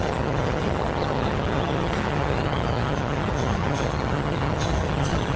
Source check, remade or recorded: remade